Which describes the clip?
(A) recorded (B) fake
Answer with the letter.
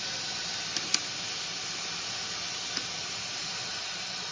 A